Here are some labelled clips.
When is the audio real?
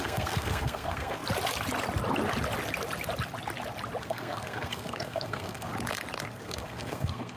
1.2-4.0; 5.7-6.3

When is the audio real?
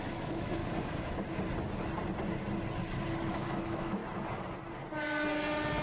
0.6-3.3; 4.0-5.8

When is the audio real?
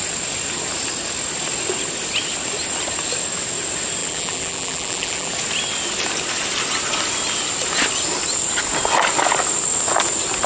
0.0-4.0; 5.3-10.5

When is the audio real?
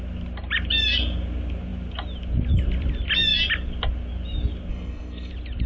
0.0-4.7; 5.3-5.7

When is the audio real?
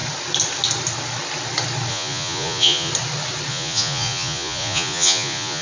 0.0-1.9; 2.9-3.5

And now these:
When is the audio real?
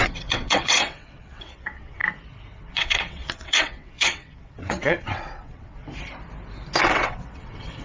2.0-2.7; 5.8-6.8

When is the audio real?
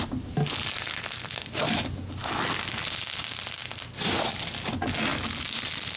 0.0-6.0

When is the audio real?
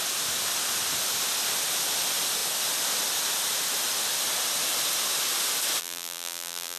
0.0-5.8